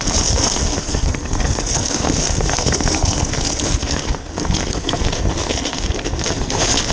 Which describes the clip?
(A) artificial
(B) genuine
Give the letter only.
A